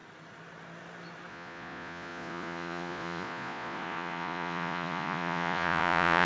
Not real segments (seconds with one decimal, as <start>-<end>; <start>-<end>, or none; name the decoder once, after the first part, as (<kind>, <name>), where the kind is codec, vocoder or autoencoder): 1.3-6.2 (vocoder, Vocos)